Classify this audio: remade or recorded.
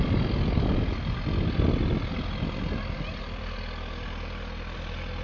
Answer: recorded